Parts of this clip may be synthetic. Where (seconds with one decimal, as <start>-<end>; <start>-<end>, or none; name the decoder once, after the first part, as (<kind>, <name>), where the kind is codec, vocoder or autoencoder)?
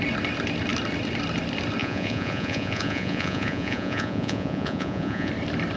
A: 1.8-5.3 (vocoder, Vocos)